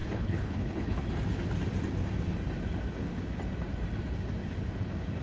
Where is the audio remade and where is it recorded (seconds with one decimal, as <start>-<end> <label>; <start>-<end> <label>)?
0.0-1.1 remade; 1.1-5.2 recorded